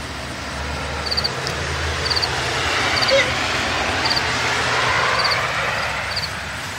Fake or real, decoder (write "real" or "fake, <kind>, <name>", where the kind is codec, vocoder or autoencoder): real